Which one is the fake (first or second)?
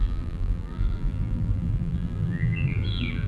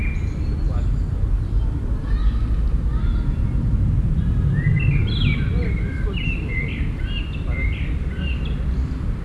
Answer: first